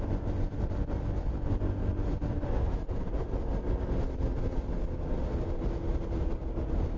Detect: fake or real real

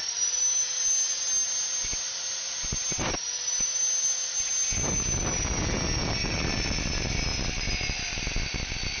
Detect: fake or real real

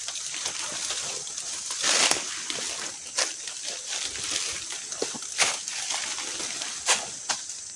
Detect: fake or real real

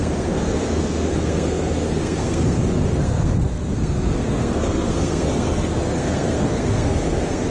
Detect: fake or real fake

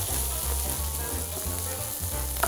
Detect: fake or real real